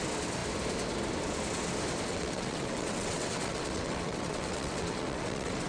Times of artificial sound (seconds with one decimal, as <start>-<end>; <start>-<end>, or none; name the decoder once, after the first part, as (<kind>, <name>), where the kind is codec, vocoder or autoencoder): 2.1-5.7 (vocoder, WaveNeXt)